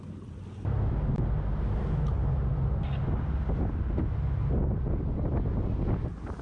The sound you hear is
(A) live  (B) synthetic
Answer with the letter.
A